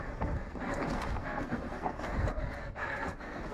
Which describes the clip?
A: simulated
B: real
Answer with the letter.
A